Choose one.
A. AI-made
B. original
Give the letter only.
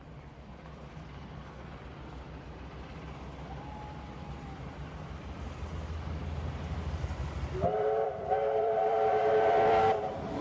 A